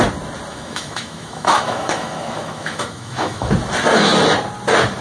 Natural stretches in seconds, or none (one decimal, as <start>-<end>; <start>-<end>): 0.0-0.5; 3.5-5.0